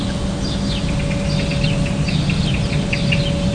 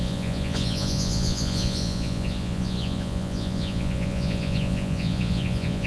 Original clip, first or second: first